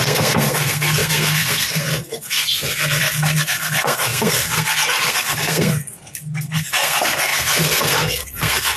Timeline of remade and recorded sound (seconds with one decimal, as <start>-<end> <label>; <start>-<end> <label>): 0.0-8.8 remade